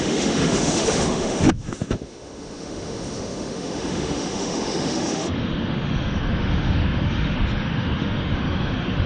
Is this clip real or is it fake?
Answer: fake